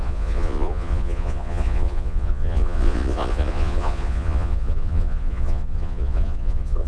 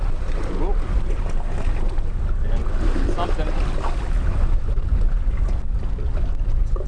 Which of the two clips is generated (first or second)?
first